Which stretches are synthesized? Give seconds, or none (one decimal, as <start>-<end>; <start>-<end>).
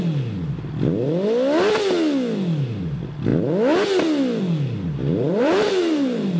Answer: 5.0-6.4